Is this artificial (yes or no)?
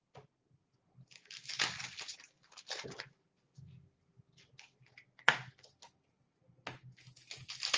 no